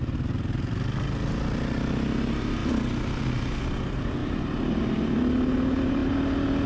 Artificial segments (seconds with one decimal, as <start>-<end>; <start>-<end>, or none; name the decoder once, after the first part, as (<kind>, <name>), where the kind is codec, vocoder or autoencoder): 4.2-5.1 (vocoder, BigVGAN v2)

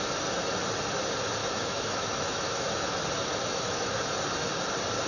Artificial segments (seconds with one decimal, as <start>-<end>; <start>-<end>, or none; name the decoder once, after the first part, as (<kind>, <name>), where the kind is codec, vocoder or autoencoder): 1.4-3.0 (autoencoder, DAC-VAE); 3.4-4.0

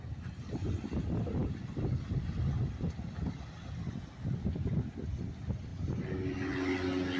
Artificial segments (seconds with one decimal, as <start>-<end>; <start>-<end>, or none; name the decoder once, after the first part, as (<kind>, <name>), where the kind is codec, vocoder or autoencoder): none

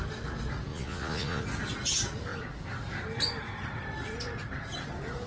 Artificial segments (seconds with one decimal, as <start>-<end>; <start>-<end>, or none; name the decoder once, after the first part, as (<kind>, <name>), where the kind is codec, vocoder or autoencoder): 0.7-1.4 (vocoder, Vocos)

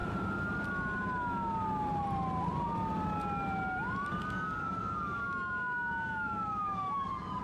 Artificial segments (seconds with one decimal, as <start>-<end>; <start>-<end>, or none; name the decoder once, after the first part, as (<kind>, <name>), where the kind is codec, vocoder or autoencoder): 4.1-7.4 (codec, DAC)